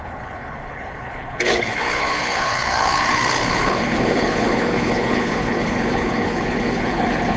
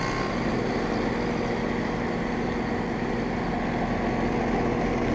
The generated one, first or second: first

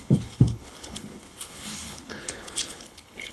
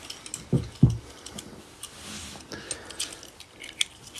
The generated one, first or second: first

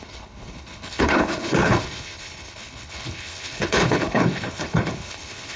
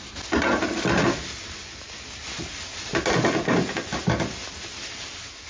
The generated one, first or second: first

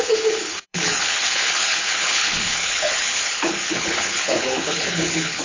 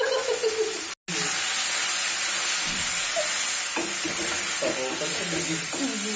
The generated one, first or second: first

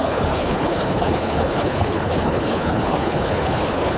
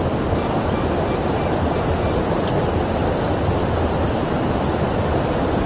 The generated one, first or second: first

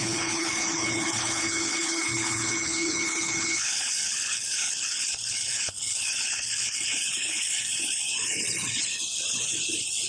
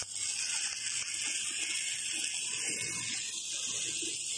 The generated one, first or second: first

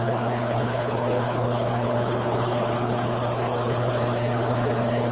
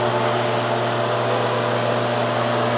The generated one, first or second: first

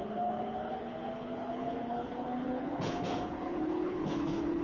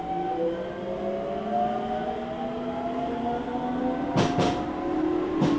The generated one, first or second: first